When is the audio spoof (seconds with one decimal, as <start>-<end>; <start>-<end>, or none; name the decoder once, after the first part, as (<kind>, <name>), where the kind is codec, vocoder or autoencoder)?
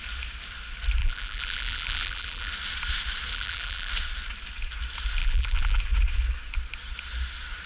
1.0-2.5 (vocoder, BigVGAN v2); 3.3-3.9; 5.2-5.8